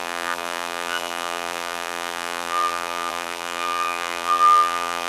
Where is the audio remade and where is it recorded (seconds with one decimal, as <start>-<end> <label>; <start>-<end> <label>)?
0.0-5.1 remade